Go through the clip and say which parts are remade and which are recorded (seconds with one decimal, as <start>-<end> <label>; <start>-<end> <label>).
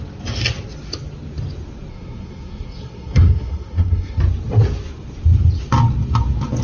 0.0-1.9 recorded; 1.9-4.2 remade; 4.2-6.6 recorded